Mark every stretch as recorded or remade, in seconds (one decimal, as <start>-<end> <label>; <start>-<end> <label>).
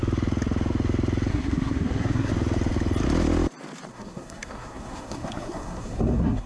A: 0.0-1.3 recorded; 1.3-2.3 remade; 2.3-3.9 recorded; 3.9-6.5 remade